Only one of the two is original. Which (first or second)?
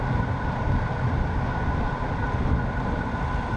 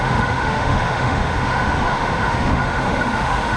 first